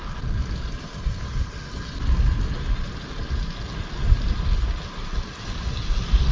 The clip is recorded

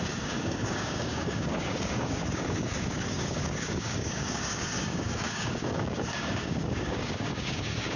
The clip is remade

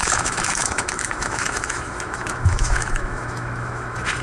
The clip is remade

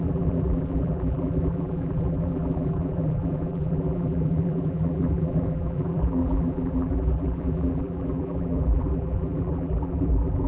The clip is remade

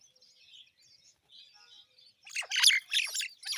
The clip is recorded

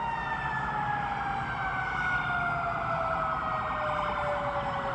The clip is recorded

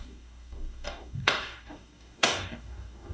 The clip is remade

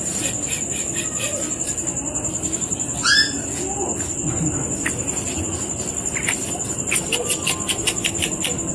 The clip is recorded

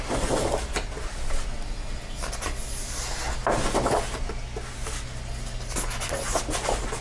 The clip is recorded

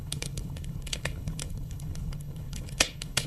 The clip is remade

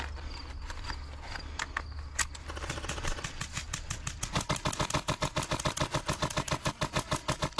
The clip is recorded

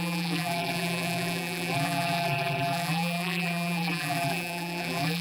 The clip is remade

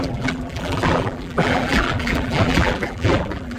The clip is remade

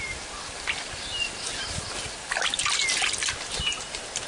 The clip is recorded